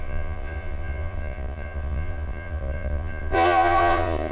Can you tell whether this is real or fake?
fake